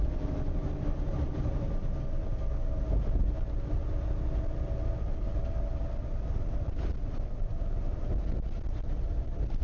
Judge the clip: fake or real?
real